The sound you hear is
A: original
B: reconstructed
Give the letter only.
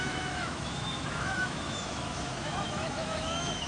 B